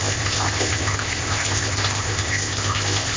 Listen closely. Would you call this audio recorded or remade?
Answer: remade